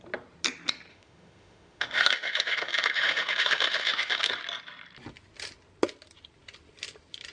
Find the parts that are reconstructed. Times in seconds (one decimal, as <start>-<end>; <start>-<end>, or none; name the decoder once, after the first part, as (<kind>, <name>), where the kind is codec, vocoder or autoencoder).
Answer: 0.9-4.3 (autoencoder, DAC-VAE)